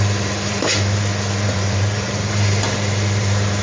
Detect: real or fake fake